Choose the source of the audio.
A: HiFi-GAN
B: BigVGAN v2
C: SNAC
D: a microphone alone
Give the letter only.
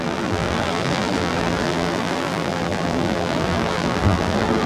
B